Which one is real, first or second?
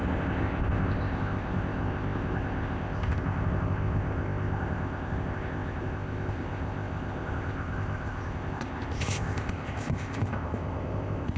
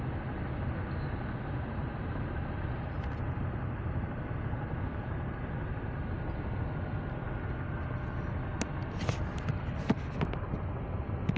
second